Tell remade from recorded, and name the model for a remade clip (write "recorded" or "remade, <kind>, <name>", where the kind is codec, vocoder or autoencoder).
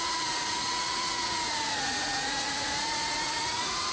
remade, vocoder, Vocos